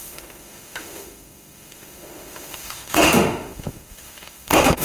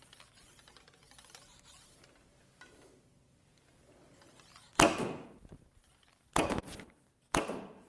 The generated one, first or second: first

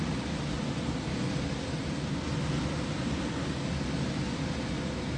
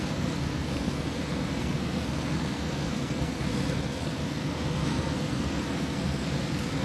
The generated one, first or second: second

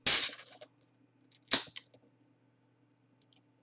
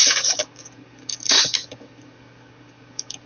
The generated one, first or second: second